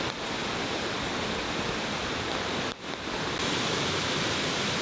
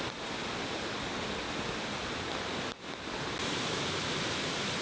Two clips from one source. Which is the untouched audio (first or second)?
second